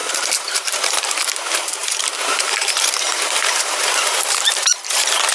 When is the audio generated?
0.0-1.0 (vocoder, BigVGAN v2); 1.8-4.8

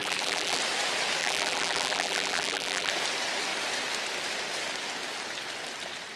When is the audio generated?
0.0-0.6 (vocoder, BigVGAN v2); 1.2-2.9

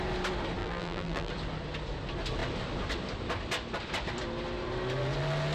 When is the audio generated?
0.6-1.3 (vocoder, BigVGAN v2)

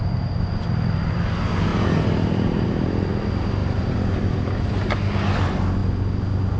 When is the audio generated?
1.7-2.9 (vocoder, BigVGAN v2); 3.6-5.0